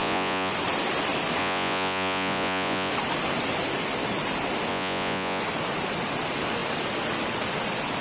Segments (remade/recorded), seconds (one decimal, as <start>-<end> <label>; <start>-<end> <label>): 0.0-0.5 remade; 0.5-1.4 recorded; 1.4-2.9 remade; 2.9-4.7 recorded; 4.7-5.4 remade; 5.4-8.0 recorded